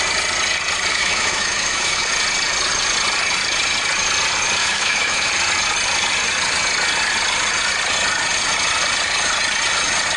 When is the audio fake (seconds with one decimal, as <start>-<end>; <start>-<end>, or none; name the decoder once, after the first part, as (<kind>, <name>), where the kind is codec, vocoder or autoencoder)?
0.9-2.1 (autoencoder, DAC-VAE); 4.6-5.3